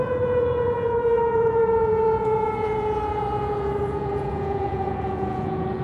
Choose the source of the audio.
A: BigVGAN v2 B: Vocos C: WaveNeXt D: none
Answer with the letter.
B